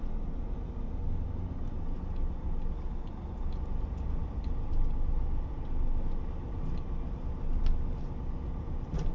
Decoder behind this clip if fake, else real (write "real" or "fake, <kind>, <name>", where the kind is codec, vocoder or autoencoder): real